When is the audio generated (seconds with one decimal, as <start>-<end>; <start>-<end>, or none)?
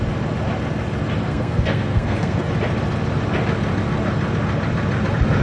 1.2-2.5